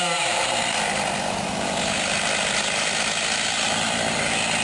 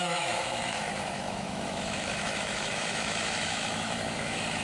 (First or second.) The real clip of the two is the first